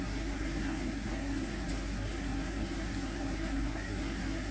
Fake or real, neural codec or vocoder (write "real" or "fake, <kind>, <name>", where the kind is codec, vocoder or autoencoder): fake, codec, SNAC